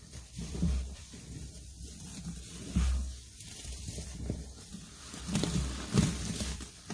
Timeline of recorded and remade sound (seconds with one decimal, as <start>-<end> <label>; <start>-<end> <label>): 0.0-6.9 remade